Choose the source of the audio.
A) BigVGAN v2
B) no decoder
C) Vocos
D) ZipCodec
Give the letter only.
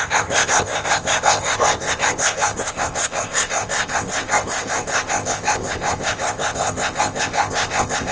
D